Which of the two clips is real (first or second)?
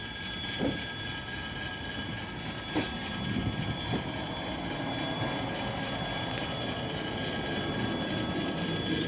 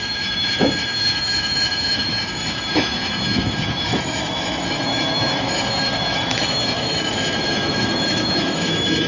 first